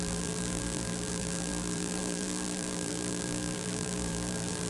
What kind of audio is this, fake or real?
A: fake